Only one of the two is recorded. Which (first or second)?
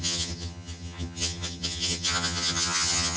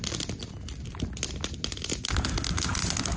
second